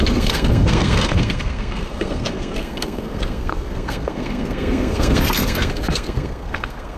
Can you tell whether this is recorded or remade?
remade